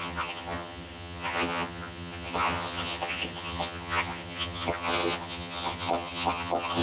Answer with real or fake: fake